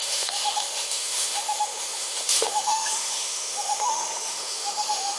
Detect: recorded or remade remade